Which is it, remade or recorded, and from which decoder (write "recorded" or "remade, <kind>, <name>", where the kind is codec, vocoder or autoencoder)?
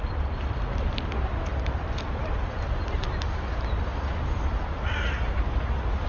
recorded